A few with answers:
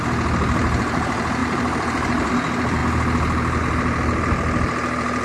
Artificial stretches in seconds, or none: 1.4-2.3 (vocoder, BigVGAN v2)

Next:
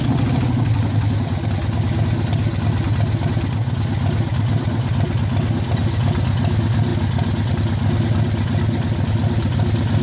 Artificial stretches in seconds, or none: none

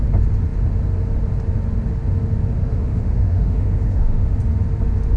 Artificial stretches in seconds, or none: 2.6-4.4 (autoencoder, DAC-VAE)

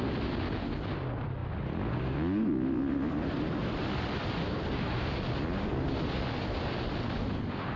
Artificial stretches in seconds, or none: 3.6-4.7 (vocoder, BigVGAN v2); 5.7-7.8

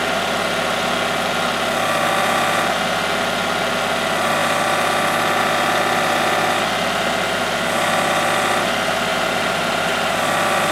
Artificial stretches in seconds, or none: 9.1-10.2 (vocoder, BigVGAN v2)

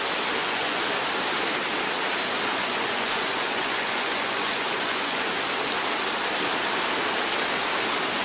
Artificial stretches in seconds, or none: 0.4-1.0 (vocoder, Vocos); 2.5-5.4